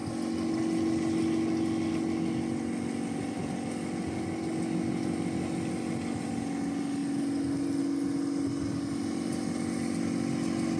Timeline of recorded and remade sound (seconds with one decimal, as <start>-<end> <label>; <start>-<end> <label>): 0.0-10.8 recorded